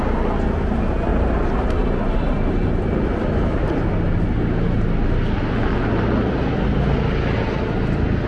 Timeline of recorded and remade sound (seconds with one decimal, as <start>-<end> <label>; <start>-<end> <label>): 0.0-8.3 recorded